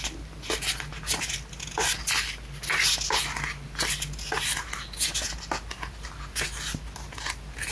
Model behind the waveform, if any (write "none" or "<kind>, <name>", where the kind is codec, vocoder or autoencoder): none